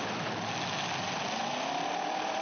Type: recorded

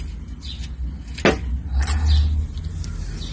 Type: recorded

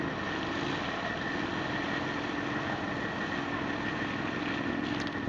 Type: recorded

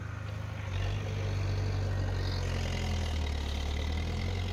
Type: recorded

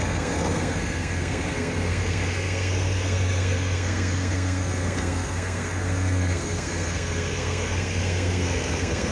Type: remade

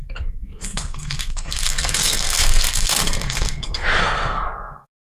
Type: remade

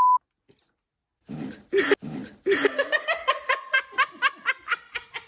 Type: recorded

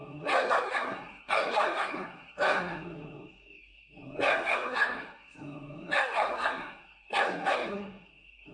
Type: remade